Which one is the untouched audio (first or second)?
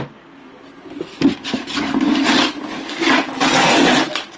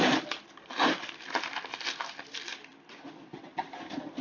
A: first